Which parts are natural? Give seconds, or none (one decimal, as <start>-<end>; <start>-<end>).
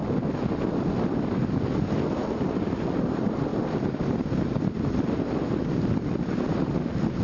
0.0-2.2; 3.1-3.5; 4.4-7.2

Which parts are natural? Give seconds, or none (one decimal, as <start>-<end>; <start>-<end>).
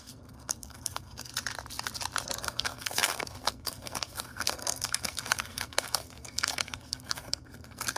1.3-2.4